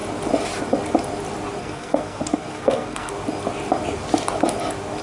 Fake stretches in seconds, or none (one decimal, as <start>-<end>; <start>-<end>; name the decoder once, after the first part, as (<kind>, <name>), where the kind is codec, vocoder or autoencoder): 1.6-3.1 (codec, SNAC)